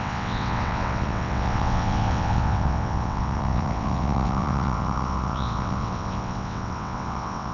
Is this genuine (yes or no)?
no